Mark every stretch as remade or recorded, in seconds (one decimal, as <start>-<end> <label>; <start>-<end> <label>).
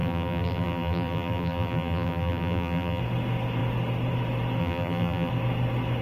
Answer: 0.0-3.0 remade; 3.0-4.6 recorded; 4.6-5.3 remade; 5.3-6.0 recorded